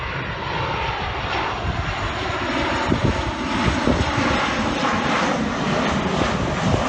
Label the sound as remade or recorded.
recorded